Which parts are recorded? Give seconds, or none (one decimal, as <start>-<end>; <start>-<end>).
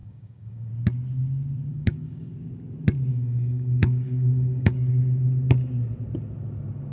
0.7-1.7; 2.3-3.1; 4.9-6.9